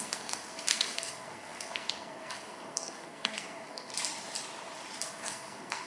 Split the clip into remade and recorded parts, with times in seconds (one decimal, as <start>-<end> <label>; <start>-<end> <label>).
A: 0.0-3.9 remade; 3.9-5.0 recorded; 5.0-5.9 remade